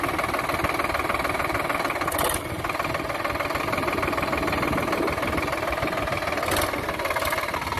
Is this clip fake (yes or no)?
no